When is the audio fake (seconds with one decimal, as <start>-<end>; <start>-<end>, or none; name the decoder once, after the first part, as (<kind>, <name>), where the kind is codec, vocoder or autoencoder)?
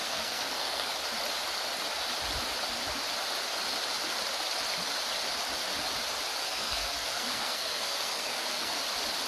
0.0-0.9 (codec, SNAC); 6.4-8.8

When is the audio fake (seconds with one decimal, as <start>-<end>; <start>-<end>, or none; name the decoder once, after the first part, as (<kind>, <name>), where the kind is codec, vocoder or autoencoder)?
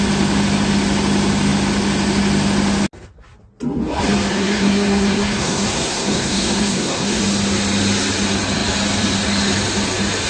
4.3-7.2 (codec, SNAC)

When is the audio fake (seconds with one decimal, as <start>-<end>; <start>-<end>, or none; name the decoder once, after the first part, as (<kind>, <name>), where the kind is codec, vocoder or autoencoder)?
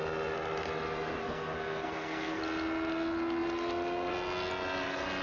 1.2-2.4 (codec, SNAC)